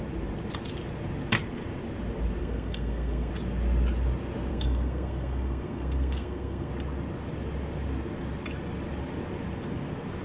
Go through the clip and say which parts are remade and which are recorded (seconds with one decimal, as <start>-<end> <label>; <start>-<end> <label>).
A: 0.0-2.4 recorded; 2.4-3.3 remade; 3.3-4.5 recorded; 4.5-6.7 remade; 6.7-10.2 recorded